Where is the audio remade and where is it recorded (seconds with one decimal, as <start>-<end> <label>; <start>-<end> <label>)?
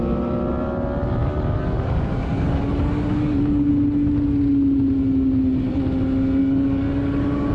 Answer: 0.0-1.2 recorded; 1.2-3.7 remade; 3.7-6.4 recorded; 6.4-7.5 remade